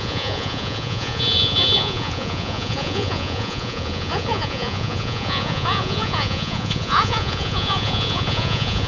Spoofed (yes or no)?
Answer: yes